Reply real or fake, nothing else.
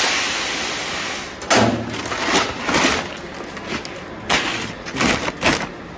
real